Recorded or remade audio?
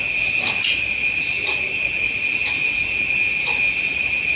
recorded